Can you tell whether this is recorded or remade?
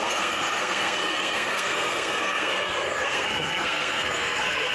remade